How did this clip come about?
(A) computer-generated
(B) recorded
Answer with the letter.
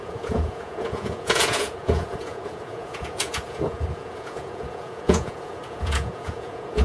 A